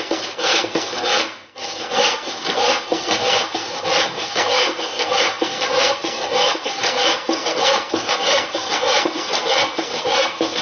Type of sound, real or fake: fake